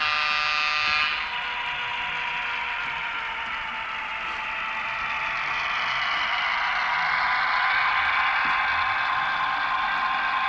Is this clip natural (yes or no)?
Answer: yes